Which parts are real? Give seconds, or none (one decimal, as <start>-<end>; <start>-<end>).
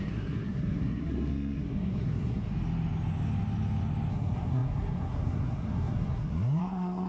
2.5-4.1